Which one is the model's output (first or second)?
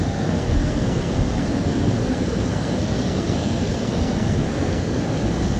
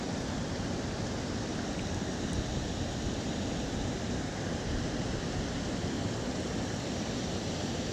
first